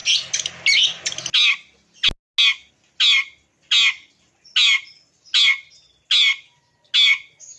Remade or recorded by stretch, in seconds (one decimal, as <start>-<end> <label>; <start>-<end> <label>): 0.0-7.6 recorded